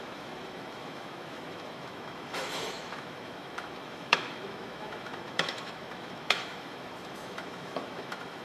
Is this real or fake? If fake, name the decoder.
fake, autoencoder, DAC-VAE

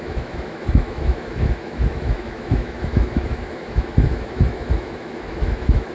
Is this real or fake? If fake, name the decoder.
fake, autoencoder, DAC-VAE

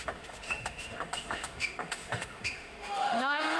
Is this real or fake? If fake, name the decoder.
fake, autoencoder, DAC-VAE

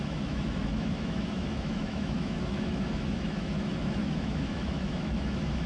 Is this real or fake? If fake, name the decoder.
fake, autoencoder, DAC-VAE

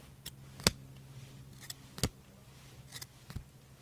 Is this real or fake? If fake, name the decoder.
real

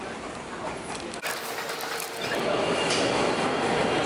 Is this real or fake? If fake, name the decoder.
real